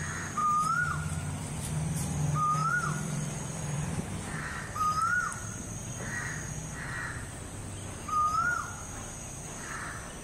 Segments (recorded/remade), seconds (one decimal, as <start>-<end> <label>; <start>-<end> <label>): 0.0-2.6 recorded; 2.6-3.9 remade; 3.9-5.4 recorded; 5.4-6.1 remade; 6.1-10.2 recorded

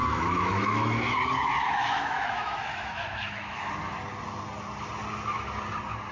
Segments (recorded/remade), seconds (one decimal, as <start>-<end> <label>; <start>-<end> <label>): 0.0-3.7 remade; 3.7-6.1 recorded

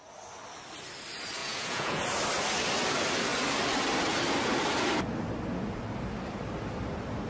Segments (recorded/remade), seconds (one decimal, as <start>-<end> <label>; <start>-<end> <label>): 0.0-1.4 recorded; 1.4-2.0 remade; 2.0-7.3 recorded

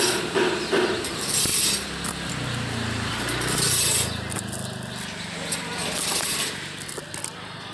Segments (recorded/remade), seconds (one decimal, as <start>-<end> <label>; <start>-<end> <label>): 0.0-7.7 recorded